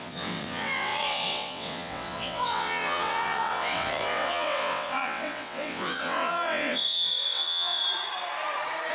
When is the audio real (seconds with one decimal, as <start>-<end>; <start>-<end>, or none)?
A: 7.8-8.9